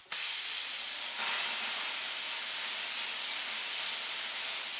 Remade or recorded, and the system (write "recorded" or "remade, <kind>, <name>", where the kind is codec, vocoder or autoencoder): recorded